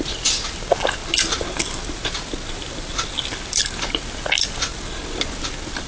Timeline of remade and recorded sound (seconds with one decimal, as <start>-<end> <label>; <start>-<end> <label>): 0.0-5.9 recorded